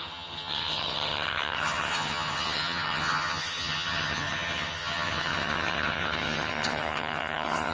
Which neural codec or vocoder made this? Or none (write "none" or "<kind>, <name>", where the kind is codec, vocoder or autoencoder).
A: vocoder, HiFi-GAN